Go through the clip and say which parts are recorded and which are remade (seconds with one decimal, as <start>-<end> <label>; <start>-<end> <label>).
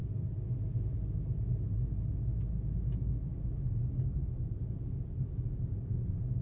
0.0-6.4 recorded